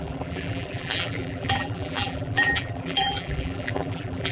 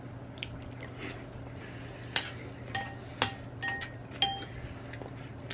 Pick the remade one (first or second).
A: first